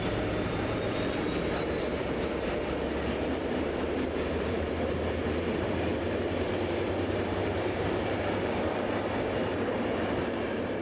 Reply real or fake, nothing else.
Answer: fake